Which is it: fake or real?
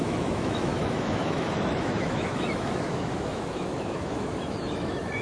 fake